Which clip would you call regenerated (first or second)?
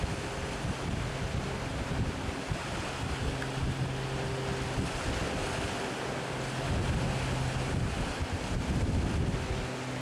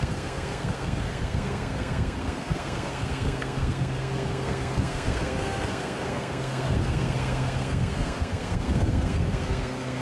second